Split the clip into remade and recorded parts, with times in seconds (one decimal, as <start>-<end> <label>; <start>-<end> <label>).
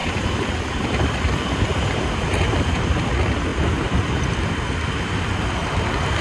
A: 0.0-2.1 remade; 2.1-6.2 recorded